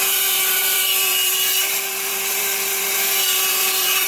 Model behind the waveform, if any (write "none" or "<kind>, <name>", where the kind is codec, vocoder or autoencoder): vocoder, BigVGAN v2